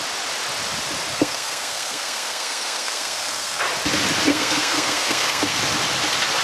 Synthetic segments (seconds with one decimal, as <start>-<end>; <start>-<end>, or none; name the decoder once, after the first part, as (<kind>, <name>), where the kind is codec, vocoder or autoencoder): 1.1-3.6 (codec, SNAC); 4.3-5.6